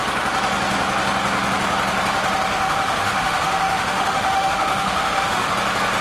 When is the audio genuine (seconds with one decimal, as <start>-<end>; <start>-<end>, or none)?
0.0-2.5; 5.5-6.0